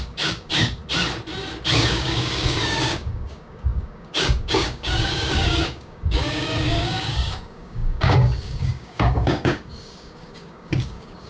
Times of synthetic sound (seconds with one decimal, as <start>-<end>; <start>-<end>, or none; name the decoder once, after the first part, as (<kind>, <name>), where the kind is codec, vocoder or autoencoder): 0.0-0.8 (codec, DAC); 1.7-11.3